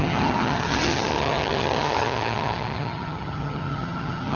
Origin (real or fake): fake